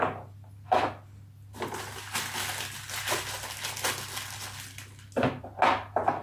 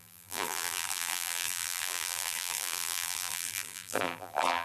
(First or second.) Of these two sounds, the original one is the first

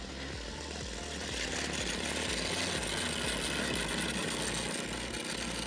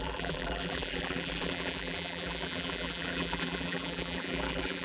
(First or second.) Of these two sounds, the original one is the first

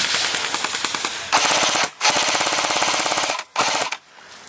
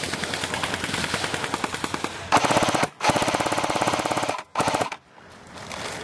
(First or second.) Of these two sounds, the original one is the first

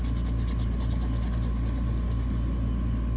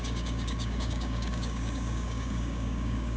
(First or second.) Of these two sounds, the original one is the first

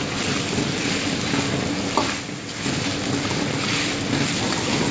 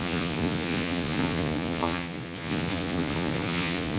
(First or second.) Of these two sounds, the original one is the first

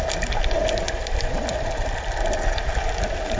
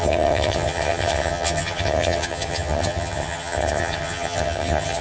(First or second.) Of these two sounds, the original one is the first